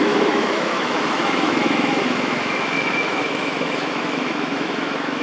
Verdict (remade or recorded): remade